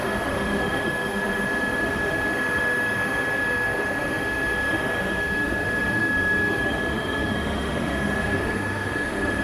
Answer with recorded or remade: remade